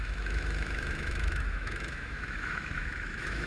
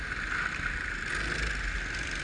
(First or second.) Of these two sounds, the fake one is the first